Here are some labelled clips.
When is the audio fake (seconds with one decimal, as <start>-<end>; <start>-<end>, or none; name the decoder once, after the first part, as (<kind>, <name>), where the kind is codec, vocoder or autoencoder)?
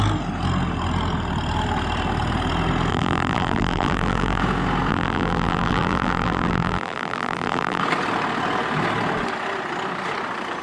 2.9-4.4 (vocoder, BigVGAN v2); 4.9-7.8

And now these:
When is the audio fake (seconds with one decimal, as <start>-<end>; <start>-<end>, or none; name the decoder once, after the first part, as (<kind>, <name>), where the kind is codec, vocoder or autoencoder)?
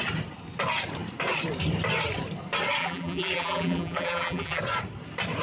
2.8-4.6 (vocoder, BigVGAN v2)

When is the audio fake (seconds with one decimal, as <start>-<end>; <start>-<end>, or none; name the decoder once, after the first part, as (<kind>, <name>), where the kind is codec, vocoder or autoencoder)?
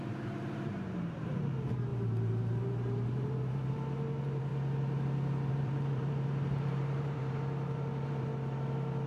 0.0-4.5 (vocoder, BigVGAN v2); 5.5-8.3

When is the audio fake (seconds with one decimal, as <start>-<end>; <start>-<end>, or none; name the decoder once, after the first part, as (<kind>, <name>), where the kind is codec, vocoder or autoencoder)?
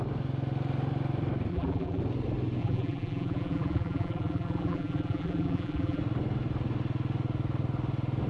1.5-2.0 (vocoder, BigVGAN v2); 2.6-6.0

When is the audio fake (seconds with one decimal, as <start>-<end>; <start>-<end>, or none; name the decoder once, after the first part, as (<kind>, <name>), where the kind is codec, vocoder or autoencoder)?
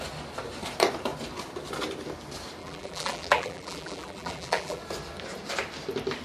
2.6-4.8 (vocoder, BigVGAN v2)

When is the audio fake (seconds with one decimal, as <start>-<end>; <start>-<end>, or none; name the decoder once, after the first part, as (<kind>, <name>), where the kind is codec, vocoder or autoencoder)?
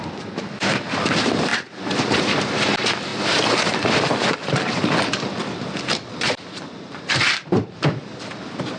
0.0-3.1 (vocoder, BigVGAN v2); 3.7-8.8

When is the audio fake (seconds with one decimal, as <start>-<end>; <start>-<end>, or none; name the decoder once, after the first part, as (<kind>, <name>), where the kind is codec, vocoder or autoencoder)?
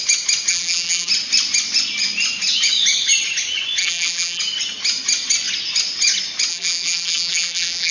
0.5-1.1 (vocoder, BigVGAN v2); 3.8-4.4; 6.5-7.9